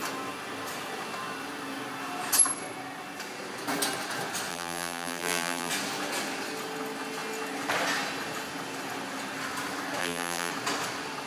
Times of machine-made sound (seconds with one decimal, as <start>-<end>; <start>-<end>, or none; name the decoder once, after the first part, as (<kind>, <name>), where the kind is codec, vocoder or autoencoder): 4.5-5.7 (vocoder, BigVGAN v2); 10.0-10.5